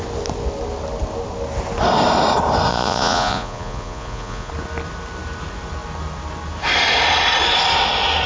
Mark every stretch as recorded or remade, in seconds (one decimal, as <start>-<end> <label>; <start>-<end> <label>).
0.0-2.7 recorded; 2.7-4.5 remade; 4.5-8.3 recorded